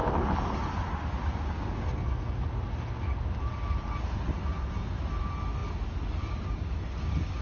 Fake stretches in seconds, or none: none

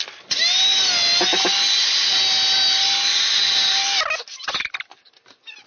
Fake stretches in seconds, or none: none